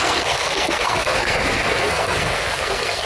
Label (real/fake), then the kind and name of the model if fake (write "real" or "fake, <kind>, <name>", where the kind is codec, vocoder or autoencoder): fake, codec, SNAC